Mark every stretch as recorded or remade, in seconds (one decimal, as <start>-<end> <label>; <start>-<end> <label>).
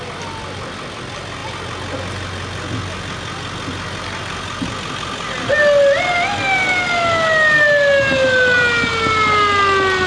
0.0-10.1 recorded